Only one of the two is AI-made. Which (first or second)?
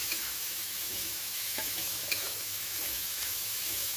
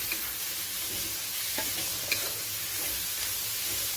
first